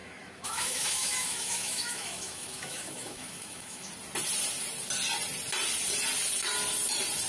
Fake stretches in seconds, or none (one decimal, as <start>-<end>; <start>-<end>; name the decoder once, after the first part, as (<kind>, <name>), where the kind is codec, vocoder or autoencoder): 0.0-3.9 (autoencoder, DAC-VAE)